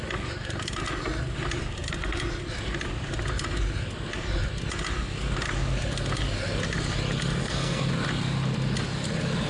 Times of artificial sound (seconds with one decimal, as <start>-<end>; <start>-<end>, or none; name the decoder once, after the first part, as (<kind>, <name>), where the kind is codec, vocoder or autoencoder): 7.4-7.9 (codec, SNAC)